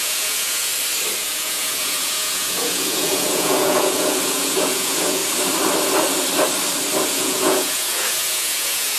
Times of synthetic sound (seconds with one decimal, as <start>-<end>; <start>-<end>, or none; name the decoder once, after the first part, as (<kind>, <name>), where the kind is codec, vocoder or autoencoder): 0.0-0.7 (vocoder, Vocos); 1.2-5.2; 7.0-9.0